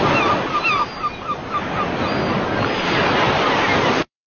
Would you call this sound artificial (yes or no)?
yes